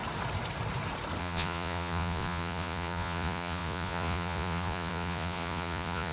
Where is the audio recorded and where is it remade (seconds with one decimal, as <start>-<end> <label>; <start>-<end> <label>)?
0.0-1.2 recorded; 1.2-6.1 remade